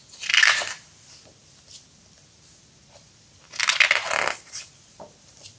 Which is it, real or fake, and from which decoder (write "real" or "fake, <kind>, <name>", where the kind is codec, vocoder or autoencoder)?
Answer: real